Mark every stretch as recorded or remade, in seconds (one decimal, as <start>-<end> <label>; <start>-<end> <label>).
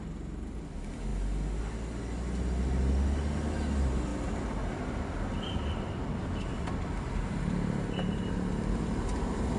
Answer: 0.0-9.6 recorded